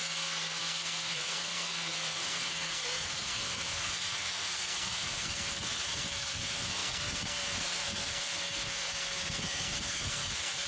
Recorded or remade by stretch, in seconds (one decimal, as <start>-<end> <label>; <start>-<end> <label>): 0.0-10.7 remade